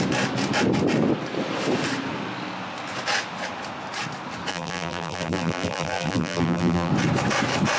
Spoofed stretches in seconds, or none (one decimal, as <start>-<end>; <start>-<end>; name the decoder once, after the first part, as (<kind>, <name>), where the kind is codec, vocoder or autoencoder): 4.5-6.9 (vocoder, BigVGAN v2)